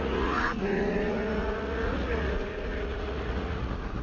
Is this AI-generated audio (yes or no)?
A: yes